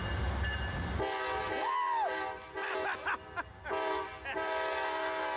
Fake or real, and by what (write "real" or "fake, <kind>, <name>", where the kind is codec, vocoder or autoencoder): real